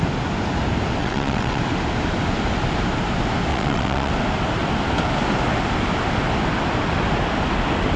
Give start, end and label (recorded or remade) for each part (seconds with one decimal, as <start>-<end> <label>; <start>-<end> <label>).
0.0-1.0 recorded; 1.0-1.6 remade; 1.6-3.5 recorded; 3.5-4.1 remade; 4.1-8.0 recorded